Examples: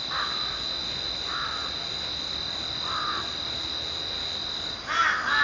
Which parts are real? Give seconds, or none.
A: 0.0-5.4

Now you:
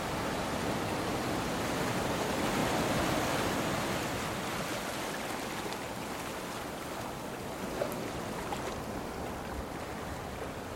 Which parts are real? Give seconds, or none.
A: 0.0-10.8

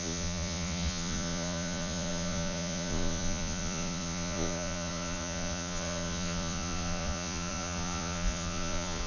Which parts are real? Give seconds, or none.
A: none

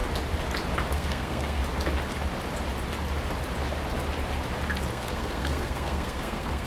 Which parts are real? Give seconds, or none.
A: 0.0-0.9; 1.6-4.9